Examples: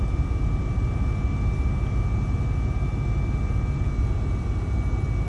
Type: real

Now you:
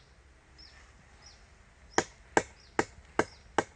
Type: real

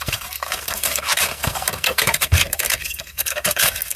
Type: fake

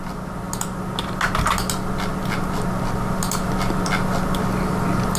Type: real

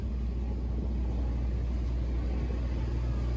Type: real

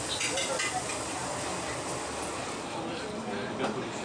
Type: real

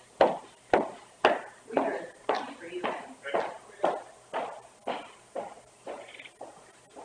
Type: real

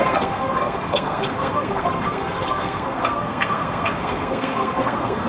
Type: fake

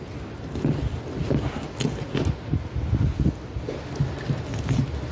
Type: real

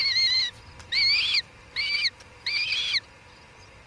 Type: real